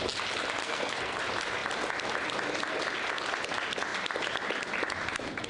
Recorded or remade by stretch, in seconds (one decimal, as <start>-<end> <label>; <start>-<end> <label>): 0.0-0.6 recorded; 0.6-1.2 remade; 1.2-5.5 recorded